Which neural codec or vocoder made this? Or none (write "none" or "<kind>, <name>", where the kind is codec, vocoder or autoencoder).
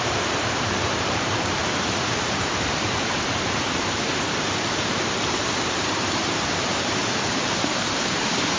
vocoder, BigVGAN v2